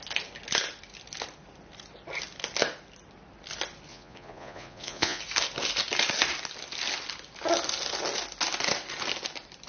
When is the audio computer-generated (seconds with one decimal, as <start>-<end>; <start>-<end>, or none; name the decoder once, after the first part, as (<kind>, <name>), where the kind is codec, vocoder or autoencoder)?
3.9-5.2 (vocoder, Vocos)